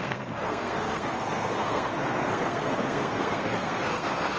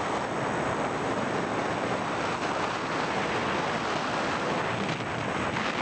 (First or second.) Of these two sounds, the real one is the second